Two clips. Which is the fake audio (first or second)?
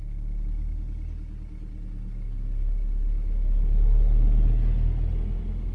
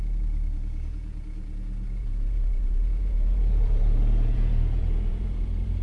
second